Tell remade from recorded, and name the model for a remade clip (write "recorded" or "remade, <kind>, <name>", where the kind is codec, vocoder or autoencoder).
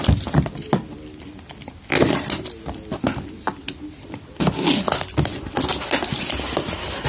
recorded